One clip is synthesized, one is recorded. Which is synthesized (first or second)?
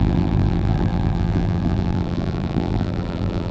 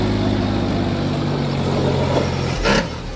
first